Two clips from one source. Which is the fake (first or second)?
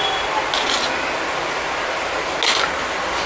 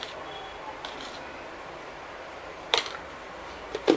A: second